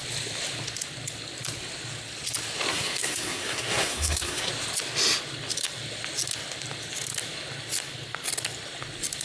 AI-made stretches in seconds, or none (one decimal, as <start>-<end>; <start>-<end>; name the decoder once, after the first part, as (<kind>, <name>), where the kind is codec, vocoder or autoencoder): 2.7-4.5 (codec, SNAC)